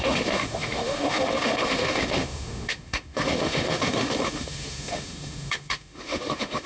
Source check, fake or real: fake